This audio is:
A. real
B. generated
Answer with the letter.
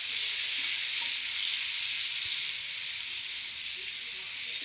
A